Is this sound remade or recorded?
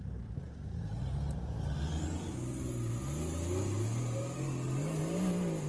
recorded